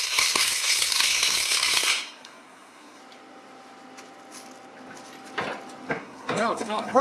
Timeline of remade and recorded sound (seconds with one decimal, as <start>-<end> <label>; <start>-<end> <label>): 0.0-3.0 remade; 3.0-5.9 recorded; 5.9-7.0 remade

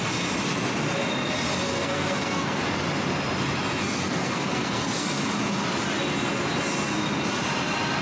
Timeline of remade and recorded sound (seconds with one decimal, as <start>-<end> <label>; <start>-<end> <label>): 0.0-1.7 recorded; 1.7-2.6 remade; 2.6-3.8 recorded; 3.8-5.2 remade; 5.2-8.0 recorded

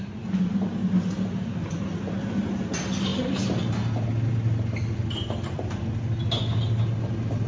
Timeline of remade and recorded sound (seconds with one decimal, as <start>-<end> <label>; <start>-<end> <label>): 0.0-7.5 recorded

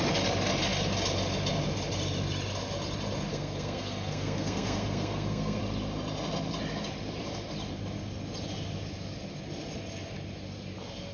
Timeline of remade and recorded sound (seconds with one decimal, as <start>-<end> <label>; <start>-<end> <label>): 0.0-3.3 recorded; 3.3-5.6 remade; 5.6-11.1 recorded

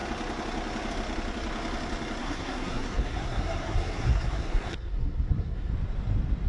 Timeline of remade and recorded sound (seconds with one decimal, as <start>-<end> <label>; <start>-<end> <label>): 0.0-2.2 recorded; 2.2-5.7 remade; 5.7-6.5 recorded